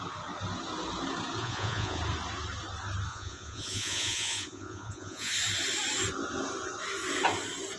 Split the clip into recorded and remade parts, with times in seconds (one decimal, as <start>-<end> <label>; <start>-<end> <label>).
0.0-1.4 recorded; 1.4-2.0 remade; 2.0-3.1 recorded; 3.1-5.3 remade; 5.3-7.8 recorded